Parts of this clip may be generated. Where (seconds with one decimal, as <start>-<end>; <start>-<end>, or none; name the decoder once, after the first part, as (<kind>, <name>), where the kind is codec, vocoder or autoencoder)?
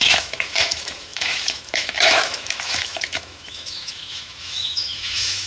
0.0-5.5 (autoencoder, DAC-VAE)